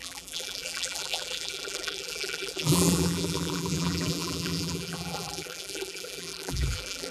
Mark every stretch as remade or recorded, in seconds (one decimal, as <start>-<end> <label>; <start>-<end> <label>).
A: 0.0-7.1 remade